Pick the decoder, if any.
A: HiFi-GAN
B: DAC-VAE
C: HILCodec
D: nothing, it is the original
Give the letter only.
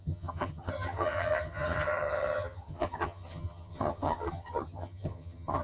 A